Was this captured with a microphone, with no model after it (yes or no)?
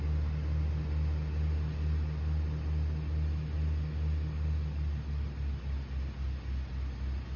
yes